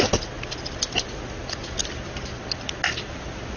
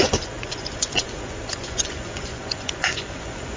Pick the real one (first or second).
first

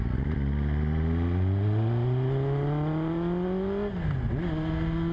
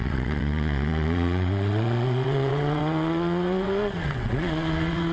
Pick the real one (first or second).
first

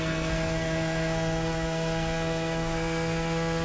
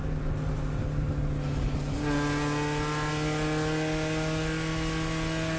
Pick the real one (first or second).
second